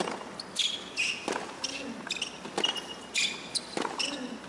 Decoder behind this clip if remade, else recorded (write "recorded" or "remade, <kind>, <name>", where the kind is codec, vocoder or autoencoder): recorded